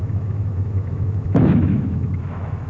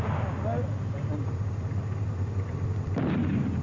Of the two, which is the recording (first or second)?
second